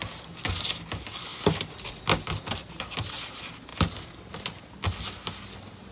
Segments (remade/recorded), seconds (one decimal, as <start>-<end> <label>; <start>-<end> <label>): 0.0-5.9 recorded